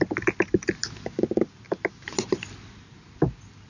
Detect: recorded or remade recorded